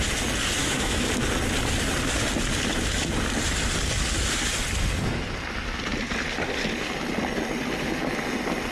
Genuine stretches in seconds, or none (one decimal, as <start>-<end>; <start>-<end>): 0.0-0.6; 1.1-8.7